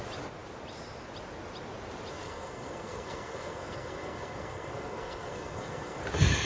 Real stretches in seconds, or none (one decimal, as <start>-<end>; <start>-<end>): 0.0-2.1; 6.0-6.5